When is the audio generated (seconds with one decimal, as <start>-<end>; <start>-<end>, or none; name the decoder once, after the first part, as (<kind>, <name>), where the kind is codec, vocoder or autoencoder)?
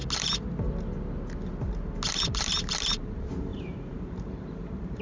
2.2-5.0 (vocoder, BigVGAN v2)